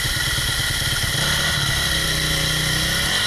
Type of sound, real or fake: real